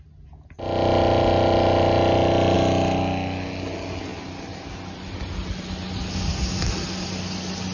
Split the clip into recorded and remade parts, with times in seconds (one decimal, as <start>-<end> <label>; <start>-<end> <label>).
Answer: 0.0-7.7 recorded